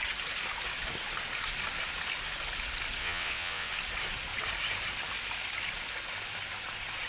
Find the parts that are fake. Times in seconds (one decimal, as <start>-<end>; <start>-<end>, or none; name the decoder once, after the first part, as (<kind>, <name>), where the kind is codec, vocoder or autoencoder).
3.0-3.7 (vocoder, WaveNeXt)